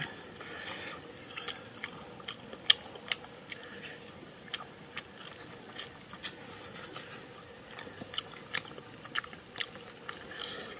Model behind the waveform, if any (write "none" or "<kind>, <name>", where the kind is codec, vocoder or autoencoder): none